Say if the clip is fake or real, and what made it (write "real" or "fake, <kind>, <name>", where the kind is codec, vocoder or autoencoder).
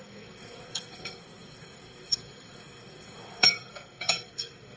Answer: fake, codec, SNAC